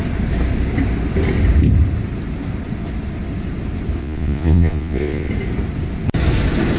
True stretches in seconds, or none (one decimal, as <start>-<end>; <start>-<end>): 0.0-4.0; 5.3-6.8